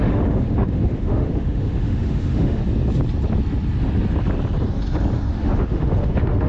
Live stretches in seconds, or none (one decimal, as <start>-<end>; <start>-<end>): 2.6-5.3